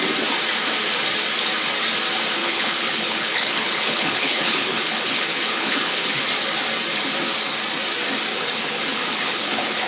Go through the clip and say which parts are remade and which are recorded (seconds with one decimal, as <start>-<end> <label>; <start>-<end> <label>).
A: 0.0-2.4 recorded; 2.4-6.2 remade; 6.2-8.3 recorded; 8.3-9.9 remade